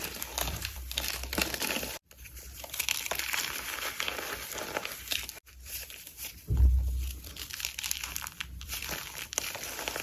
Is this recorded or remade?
remade